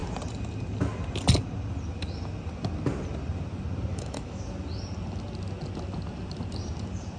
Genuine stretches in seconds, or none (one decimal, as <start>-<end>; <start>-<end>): 0.0-3.9; 4.4-7.2